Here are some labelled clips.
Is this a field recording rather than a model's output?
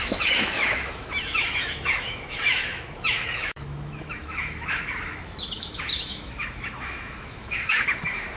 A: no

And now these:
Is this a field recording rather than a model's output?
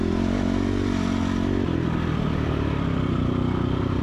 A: yes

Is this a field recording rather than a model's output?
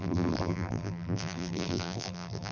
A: no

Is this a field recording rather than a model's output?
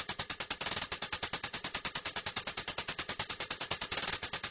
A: yes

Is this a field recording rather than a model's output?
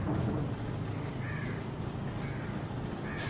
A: yes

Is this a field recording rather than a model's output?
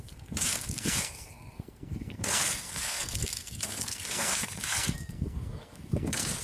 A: no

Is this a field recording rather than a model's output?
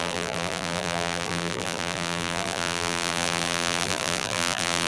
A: no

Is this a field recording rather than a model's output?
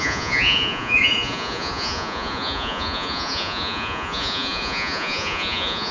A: no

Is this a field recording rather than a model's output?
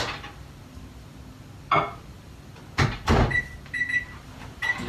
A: yes